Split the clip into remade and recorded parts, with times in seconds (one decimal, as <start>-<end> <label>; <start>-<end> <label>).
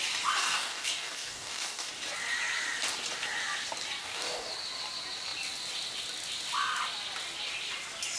0.0-0.4 recorded; 0.4-1.9 remade; 1.9-4.0 recorded; 4.0-4.5 remade; 4.5-8.2 recorded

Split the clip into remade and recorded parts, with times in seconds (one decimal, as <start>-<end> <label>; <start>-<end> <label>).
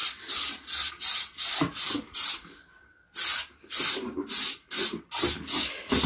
0.0-6.1 recorded